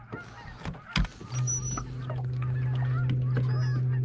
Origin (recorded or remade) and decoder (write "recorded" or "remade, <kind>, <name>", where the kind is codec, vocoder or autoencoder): recorded